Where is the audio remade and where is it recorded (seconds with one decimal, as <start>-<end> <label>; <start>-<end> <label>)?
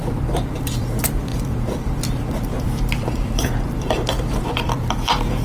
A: 0.0-5.4 remade